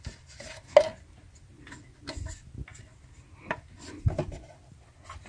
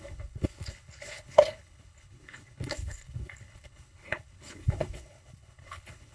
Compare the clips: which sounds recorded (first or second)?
first